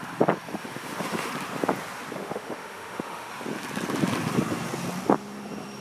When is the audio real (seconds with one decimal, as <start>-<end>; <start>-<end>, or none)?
0.0-0.6; 1.3-2.2; 3.3-5.8